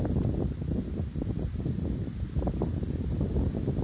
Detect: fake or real real